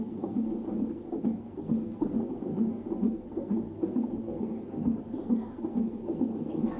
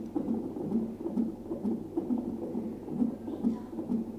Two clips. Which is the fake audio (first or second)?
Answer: first